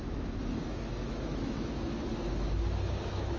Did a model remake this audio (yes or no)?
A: yes